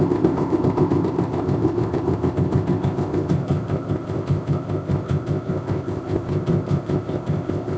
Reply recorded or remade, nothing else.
remade